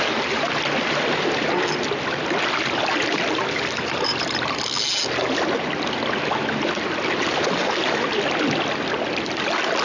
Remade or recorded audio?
recorded